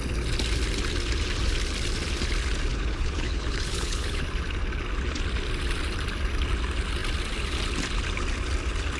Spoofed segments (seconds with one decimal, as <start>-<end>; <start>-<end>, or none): 2.7-4.2